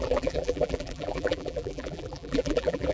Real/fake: fake